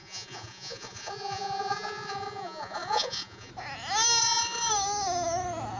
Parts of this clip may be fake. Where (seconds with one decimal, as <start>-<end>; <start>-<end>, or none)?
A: 0.0-3.5; 4.2-4.7